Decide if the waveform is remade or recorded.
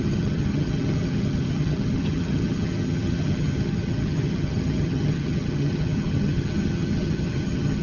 remade